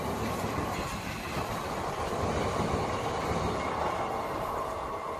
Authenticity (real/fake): real